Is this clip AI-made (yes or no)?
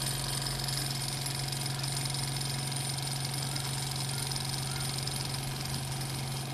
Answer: no